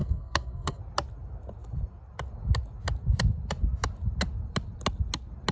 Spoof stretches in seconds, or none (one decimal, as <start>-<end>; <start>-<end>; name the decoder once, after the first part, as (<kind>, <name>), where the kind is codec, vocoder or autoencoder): 0.0-0.8 (codec, SNAC)